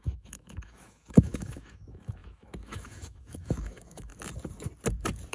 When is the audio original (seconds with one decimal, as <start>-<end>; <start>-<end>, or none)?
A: 4.1-5.3

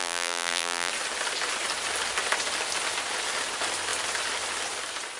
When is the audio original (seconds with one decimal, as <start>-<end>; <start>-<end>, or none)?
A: 0.9-5.2

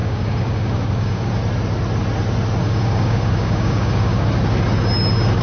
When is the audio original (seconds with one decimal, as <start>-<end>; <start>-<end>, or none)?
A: 1.3-2.6; 4.3-5.4